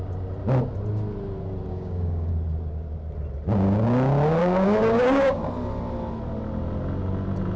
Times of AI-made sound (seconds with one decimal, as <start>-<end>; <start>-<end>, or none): 1.7-2.3; 4.4-5.4